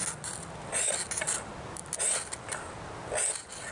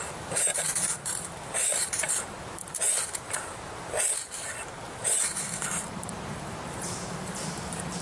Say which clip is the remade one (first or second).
second